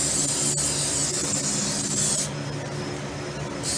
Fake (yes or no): no